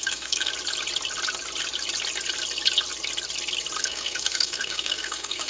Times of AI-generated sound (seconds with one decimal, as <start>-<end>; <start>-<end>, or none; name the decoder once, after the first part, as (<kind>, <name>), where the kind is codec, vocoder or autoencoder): 0.0-0.5 (codec, SNAC); 3.8-5.5